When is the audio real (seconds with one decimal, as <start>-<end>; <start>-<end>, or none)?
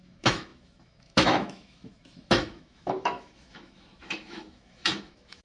none